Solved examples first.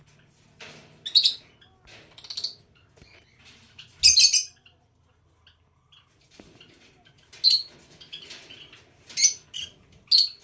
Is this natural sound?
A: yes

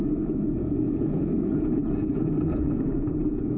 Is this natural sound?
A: no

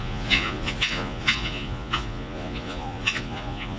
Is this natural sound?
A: no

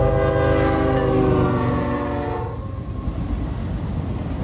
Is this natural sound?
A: yes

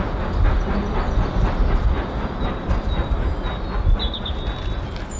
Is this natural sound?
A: yes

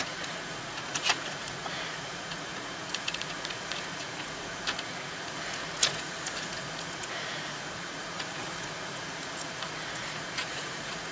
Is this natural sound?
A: no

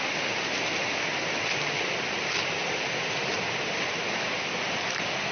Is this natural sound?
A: yes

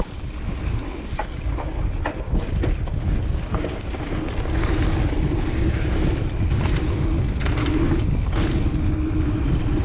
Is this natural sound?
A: yes